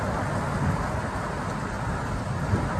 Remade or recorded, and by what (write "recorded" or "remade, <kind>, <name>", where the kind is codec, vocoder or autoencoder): recorded